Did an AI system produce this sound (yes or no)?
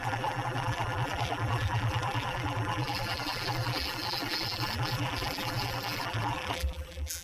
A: yes